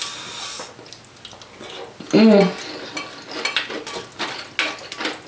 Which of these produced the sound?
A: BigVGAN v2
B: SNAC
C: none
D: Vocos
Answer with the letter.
C